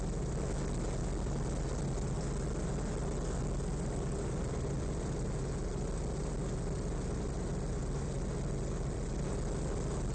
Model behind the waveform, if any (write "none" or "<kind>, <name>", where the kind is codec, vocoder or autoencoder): none